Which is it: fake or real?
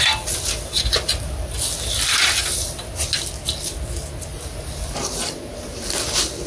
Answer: real